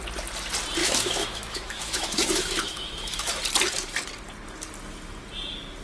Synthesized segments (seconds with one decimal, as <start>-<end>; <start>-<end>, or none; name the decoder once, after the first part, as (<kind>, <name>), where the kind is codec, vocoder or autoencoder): 0.8-3.4 (autoencoder, DAC-VAE)